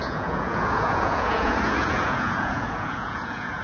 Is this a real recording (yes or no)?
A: no